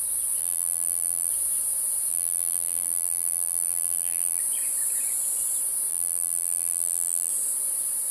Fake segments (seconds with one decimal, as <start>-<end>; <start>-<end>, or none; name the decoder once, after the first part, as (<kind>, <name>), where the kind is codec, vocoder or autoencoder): 0.4-1.3 (vocoder, BigVGAN v2); 2.1-4.4; 5.9-7.3